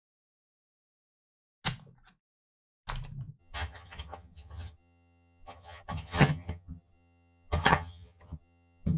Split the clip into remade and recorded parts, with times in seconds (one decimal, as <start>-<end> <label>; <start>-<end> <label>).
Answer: 0.0-3.4 recorded; 3.4-9.0 remade